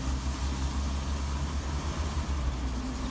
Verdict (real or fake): real